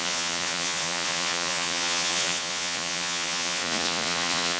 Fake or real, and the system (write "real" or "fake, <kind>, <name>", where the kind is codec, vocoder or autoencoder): fake, vocoder, Vocos